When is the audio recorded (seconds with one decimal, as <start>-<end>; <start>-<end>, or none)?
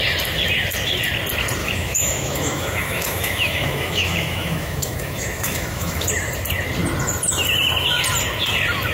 0.0-1.6; 6.1-8.9